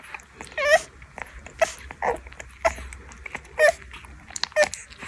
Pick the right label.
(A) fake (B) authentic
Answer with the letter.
B